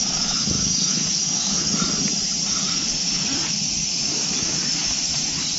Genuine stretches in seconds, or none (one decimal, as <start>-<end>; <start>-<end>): 1.7-3.9; 5.0-5.6